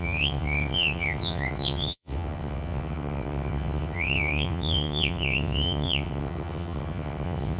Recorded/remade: remade